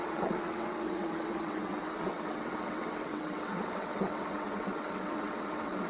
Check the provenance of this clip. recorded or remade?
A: remade